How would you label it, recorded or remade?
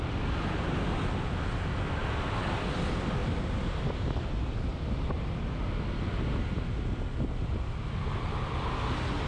recorded